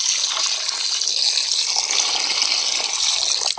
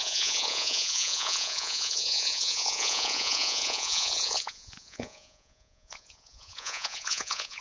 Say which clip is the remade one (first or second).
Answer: second